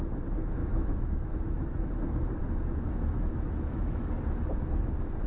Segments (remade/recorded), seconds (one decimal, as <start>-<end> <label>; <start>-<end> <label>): 0.0-0.6 recorded; 0.6-1.9 remade; 1.9-2.4 recorded; 2.4-4.1 remade; 4.1-5.3 recorded